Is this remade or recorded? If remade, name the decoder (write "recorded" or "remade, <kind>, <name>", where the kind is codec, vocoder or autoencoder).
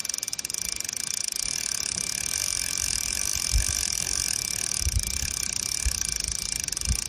recorded